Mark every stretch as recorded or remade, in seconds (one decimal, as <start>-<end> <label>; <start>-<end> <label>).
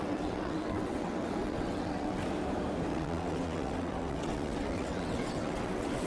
0.0-2.2 remade; 2.2-2.9 recorded; 2.9-6.1 remade